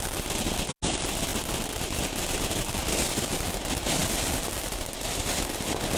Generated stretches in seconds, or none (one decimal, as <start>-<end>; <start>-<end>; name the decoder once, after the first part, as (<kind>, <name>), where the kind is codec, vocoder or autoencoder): none